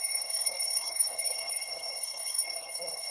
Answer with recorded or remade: remade